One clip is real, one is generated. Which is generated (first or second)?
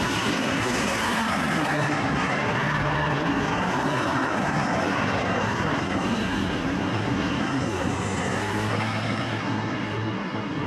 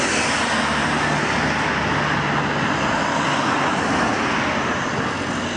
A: first